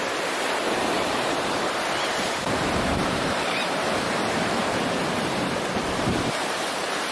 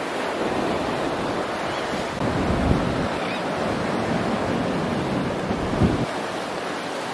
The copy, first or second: first